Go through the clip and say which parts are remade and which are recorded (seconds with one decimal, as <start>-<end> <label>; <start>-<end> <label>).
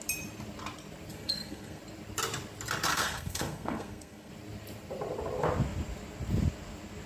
0.0-1.1 recorded; 1.1-1.8 remade; 1.8-2.9 recorded; 2.9-4.3 remade; 4.3-7.1 recorded